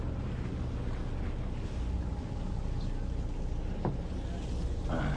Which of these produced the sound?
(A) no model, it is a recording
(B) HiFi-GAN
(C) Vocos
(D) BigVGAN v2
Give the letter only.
A